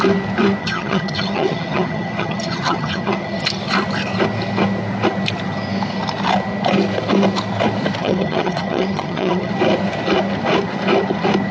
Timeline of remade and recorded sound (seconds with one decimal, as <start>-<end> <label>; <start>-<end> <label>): 0.0-0.6 recorded; 0.6-3.6 remade; 3.6-8.0 recorded; 8.0-9.5 remade; 9.5-11.5 recorded